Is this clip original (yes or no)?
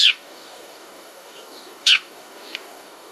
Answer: no